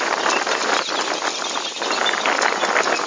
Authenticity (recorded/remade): recorded